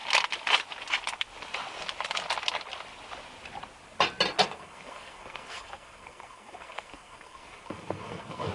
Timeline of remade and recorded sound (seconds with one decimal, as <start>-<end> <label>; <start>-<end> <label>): 0.0-4.4 recorded; 4.4-8.5 remade